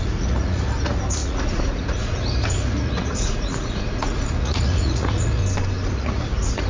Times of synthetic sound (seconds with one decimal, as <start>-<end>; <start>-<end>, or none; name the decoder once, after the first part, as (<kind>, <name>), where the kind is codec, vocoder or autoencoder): 0.0-5.4 (vocoder, Vocos); 5.9-6.7